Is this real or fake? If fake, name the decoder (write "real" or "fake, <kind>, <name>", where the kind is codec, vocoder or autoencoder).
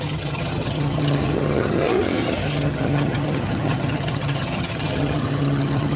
fake, vocoder, HiFi-GAN